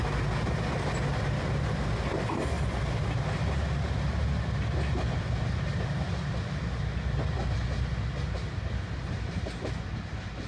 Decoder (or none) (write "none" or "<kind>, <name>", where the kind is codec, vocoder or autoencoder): none